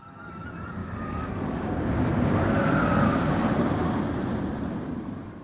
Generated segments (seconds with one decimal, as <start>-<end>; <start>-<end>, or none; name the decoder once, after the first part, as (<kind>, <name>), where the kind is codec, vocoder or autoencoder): 0.8-4.0 (codec, DAC)

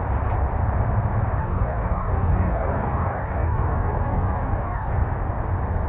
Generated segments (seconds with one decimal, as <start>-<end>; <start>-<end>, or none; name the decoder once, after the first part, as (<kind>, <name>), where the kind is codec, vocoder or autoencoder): 1.4-4.9 (codec, DAC)